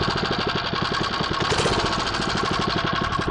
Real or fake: real